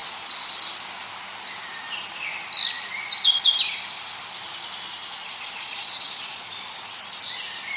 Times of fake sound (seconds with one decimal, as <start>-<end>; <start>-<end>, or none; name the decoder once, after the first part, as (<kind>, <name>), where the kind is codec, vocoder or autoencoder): 0.0-0.5 (vocoder, Vocos); 5.2-6.5